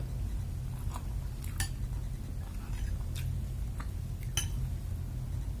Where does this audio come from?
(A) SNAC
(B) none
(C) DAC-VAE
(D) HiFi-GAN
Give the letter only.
B